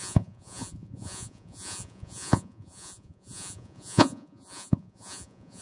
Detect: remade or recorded remade